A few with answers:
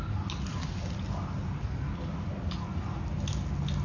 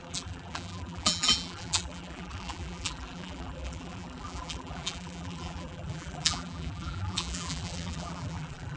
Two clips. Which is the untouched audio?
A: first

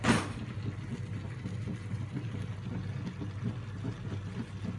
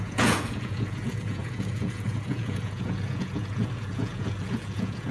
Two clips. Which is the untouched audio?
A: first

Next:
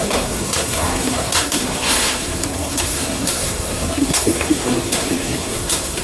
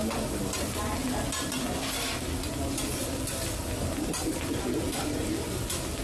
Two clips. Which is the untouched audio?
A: second